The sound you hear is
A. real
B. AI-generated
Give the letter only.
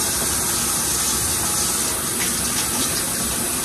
A